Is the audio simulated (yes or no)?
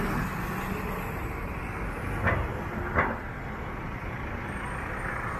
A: no